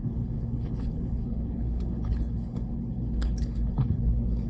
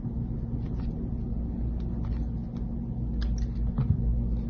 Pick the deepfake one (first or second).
first